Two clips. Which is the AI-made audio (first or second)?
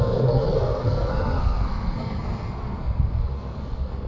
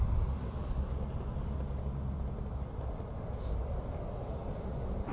first